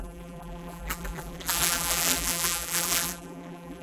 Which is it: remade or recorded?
remade